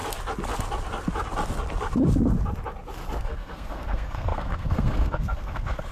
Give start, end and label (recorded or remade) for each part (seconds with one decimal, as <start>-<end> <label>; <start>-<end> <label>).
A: 0.0-3.2 recorded; 3.2-5.9 remade